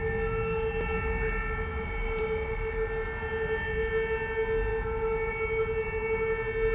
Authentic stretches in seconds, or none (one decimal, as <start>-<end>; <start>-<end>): 0.0-1.7; 2.7-6.7